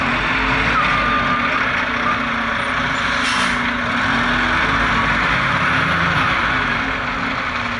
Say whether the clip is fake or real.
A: real